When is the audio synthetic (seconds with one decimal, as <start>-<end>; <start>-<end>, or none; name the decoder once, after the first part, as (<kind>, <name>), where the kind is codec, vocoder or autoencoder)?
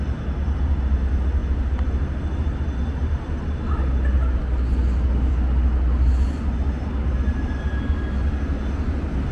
none